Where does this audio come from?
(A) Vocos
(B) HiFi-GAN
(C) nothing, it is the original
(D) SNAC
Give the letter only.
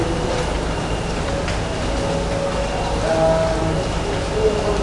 C